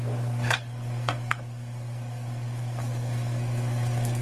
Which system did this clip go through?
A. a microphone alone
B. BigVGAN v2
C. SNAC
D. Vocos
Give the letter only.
C